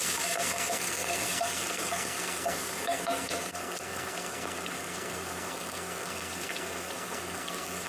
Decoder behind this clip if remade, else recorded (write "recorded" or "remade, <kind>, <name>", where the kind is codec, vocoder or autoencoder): remade, codec, SNAC